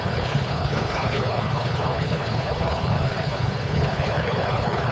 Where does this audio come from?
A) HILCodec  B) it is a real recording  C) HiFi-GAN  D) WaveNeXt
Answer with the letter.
A